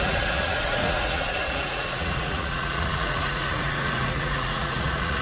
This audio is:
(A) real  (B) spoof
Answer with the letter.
B